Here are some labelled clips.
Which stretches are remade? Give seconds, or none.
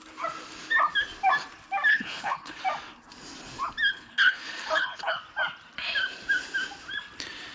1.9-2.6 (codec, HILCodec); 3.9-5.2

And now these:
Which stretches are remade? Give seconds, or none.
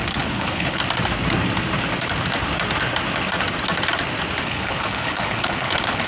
0.0-0.8 (codec, HILCodec); 4.4-6.1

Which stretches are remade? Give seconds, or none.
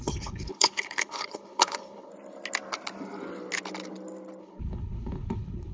0.0-2.1 (codec, HILCodec); 4.4-5.7